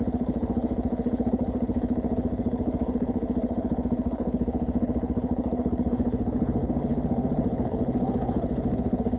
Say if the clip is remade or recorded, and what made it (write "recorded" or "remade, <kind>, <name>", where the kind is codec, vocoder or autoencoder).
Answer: remade, codec, HILCodec